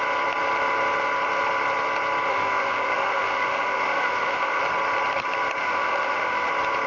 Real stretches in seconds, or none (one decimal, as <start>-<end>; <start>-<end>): 0.0-2.3; 4.6-5.6; 6.5-6.9